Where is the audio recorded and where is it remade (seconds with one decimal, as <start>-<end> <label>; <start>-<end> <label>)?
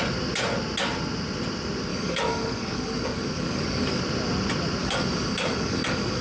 0.0-1.9 recorded; 1.9-4.0 remade; 4.0-4.8 recorded; 4.8-6.2 remade